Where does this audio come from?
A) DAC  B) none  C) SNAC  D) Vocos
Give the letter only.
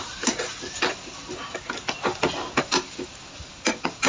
B